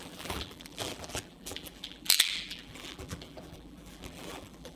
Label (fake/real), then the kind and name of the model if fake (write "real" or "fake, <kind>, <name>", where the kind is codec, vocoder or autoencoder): fake, vocoder, BigVGAN v2